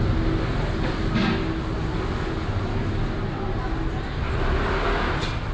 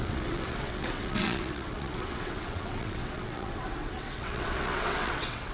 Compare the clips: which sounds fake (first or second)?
second